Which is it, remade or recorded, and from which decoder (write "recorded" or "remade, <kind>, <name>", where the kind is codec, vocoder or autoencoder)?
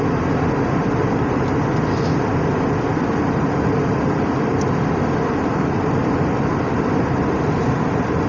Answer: recorded